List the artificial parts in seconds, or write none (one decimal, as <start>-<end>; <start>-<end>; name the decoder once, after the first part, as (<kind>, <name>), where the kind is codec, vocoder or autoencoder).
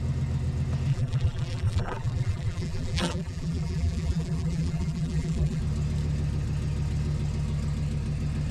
0.9-5.6 (vocoder, BigVGAN v2)